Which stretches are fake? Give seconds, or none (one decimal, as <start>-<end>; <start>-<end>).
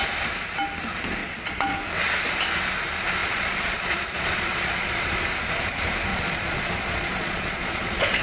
1.2-1.8; 3.2-5.2; 6.1-8.2